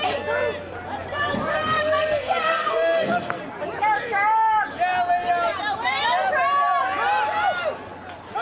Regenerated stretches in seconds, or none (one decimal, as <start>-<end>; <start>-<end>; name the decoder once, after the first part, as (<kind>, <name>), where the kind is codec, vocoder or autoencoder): 1.5-3.4 (codec, SNAC)